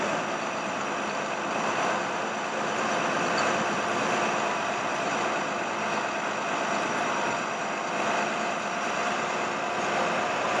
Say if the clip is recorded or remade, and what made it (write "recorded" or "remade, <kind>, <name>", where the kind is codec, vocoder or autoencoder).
remade, vocoder, BigVGAN v2